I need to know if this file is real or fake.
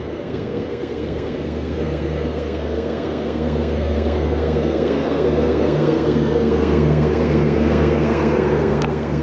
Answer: fake